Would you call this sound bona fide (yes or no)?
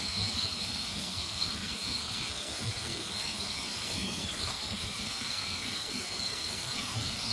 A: no